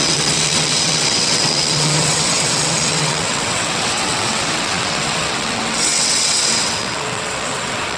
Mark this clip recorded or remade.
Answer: remade